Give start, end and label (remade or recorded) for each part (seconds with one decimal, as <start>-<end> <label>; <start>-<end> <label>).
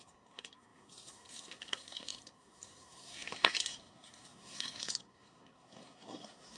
0.0-6.6 remade